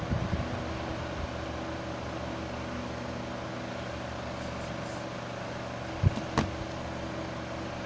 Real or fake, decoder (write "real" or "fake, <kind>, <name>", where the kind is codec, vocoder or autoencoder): real